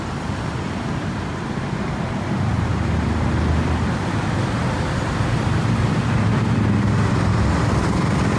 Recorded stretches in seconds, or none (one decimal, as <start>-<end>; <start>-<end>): none